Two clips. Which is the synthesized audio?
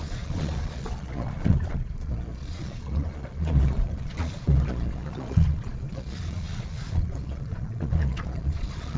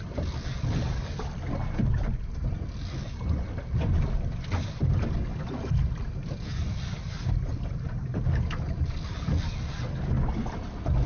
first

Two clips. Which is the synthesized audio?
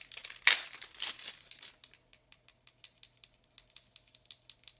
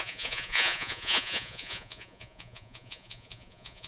second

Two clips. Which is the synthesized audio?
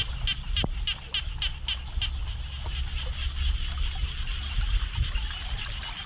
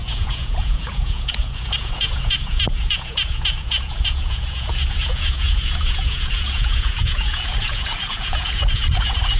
second